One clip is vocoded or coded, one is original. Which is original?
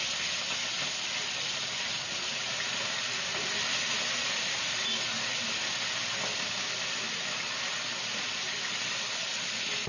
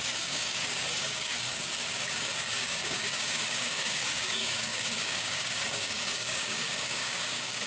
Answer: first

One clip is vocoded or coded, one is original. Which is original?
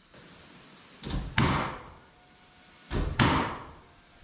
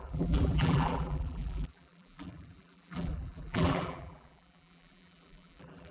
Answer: first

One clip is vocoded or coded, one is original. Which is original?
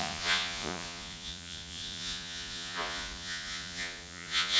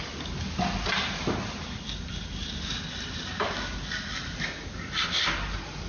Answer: second